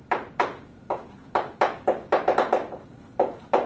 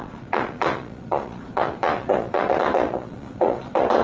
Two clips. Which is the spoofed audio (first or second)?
second